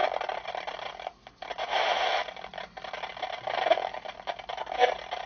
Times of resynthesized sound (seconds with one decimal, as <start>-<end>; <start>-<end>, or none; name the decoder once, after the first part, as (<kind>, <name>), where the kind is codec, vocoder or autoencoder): none